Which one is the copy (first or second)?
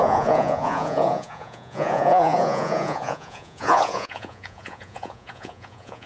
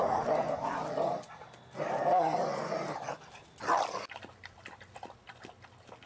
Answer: first